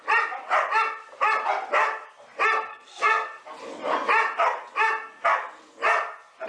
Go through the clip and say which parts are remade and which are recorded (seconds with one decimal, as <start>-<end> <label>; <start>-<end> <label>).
0.0-2.7 recorded; 2.7-3.4 remade; 3.4-6.5 recorded